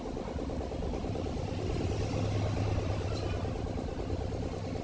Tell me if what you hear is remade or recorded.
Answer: recorded